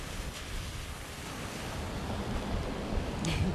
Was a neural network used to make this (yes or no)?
no